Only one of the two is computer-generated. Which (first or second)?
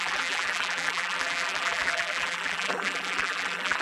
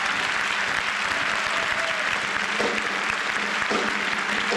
first